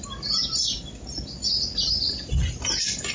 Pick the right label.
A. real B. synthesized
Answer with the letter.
A